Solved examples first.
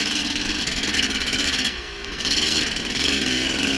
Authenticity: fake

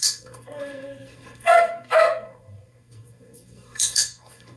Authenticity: fake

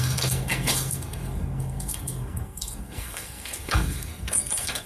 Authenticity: fake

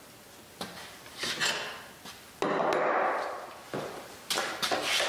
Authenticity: real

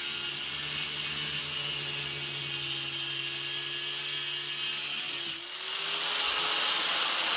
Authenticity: real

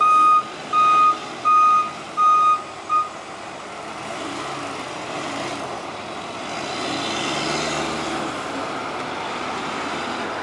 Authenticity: real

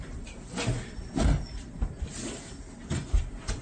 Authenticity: real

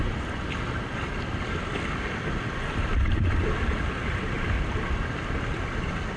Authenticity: real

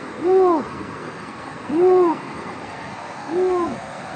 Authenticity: fake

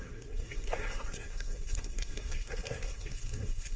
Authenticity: fake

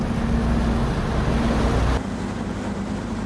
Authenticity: real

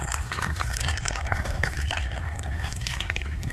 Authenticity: fake